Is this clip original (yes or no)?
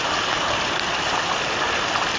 yes